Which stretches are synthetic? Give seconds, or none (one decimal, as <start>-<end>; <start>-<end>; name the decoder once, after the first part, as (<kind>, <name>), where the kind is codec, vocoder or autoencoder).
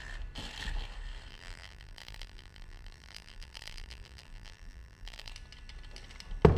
1.3-5.3 (vocoder, BigVGAN v2)